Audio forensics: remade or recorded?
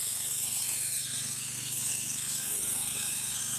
remade